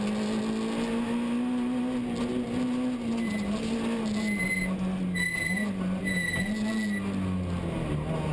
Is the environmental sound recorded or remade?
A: recorded